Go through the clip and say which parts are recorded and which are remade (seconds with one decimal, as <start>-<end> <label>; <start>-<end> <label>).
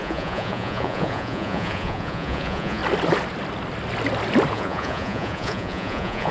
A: 0.0-2.8 remade; 2.8-4.5 recorded; 4.5-6.3 remade